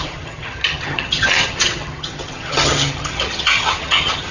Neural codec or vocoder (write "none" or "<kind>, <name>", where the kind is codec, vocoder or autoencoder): vocoder, HiFi-GAN